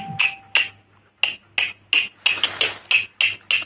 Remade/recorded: recorded